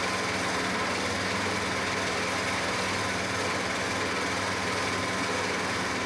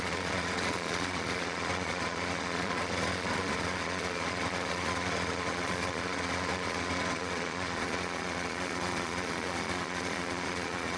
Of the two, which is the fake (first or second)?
second